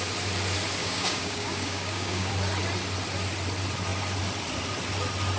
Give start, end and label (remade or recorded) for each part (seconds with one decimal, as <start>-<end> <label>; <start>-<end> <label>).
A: 0.0-0.8 recorded; 0.8-2.3 remade; 2.3-5.4 recorded